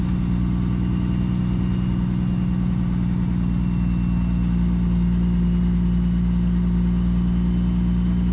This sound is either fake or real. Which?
real